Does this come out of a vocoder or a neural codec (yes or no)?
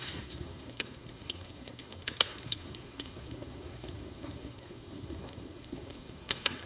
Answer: yes